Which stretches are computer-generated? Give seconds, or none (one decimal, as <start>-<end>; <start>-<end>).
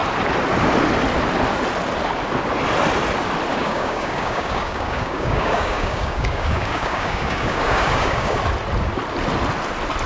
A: 3.5-8.4